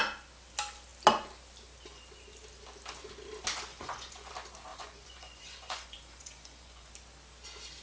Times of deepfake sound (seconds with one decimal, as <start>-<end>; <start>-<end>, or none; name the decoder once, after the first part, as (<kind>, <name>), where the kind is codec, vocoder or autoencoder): 3.7-4.3 (vocoder, Vocos); 4.7-6.9